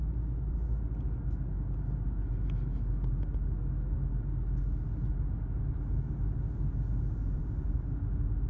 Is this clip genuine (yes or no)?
yes